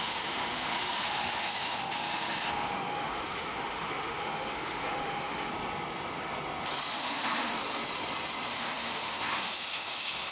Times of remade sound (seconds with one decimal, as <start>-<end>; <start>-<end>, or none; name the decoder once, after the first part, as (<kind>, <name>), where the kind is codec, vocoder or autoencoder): 0.0-5.5 (autoencoder, DAC-VAE); 6.9-7.5; 8.5-10.3